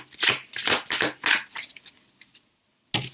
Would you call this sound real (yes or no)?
yes